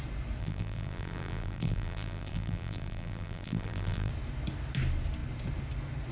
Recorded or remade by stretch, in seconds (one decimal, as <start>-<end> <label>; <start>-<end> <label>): 0.0-0.4 recorded; 0.4-4.1 remade; 4.1-6.1 recorded

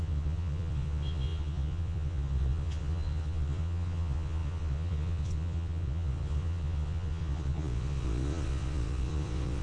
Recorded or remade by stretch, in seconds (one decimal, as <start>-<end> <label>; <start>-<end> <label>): 0.0-9.6 remade